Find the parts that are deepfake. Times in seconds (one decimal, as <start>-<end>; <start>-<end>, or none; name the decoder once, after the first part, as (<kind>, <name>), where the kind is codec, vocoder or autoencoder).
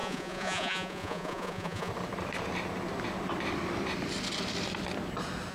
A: 0.0-1.9 (vocoder, Vocos)